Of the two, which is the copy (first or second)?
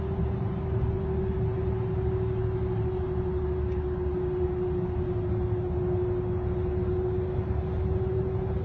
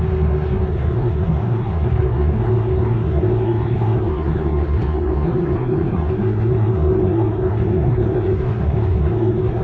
second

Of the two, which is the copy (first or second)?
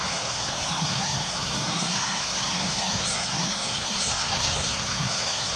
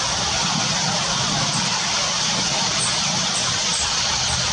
first